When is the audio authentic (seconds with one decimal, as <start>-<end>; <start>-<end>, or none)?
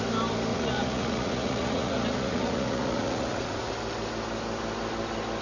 0.0-0.5; 3.7-5.4